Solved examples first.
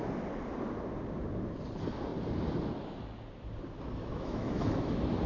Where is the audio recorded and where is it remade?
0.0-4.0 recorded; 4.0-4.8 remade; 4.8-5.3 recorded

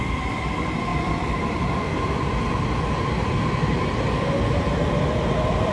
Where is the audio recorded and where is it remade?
0.0-5.7 remade

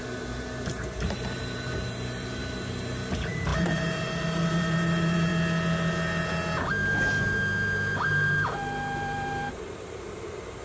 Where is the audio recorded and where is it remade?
0.0-5.3 remade; 5.3-8.1 recorded; 8.1-10.6 remade

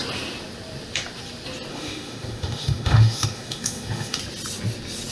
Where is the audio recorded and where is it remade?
0.0-1.7 recorded; 1.7-4.2 remade; 4.2-5.1 recorded

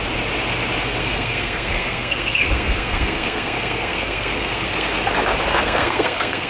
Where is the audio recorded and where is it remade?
0.0-1.0 recorded; 1.0-4.9 remade; 4.9-5.5 recorded; 5.5-6.5 remade

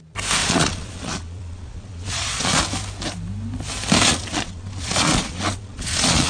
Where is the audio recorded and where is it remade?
0.0-0.4 recorded; 0.4-2.6 remade; 2.6-4.1 recorded; 4.1-6.3 remade

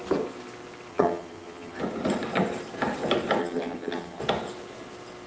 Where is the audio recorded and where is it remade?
0.0-0.9 recorded; 0.9-1.8 remade; 1.8-3.4 recorded; 3.4-4.2 remade; 4.2-5.3 recorded